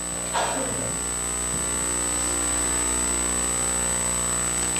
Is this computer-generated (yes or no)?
no